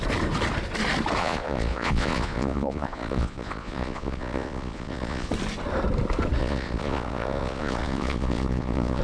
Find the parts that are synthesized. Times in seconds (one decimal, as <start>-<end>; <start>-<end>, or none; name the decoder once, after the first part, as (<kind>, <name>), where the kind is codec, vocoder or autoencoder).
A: 1.2-5.3 (vocoder, Vocos); 6.4-9.0